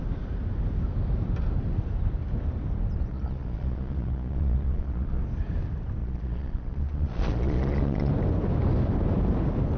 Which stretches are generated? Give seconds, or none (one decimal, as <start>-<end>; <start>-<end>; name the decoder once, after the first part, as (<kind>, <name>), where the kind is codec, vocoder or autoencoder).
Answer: 3.1-5.2 (vocoder, Vocos); 6.0-8.1